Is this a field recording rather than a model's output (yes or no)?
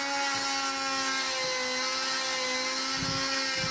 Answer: yes